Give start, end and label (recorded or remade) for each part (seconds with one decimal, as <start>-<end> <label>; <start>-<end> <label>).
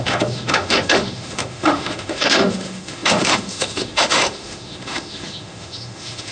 0.0-6.3 remade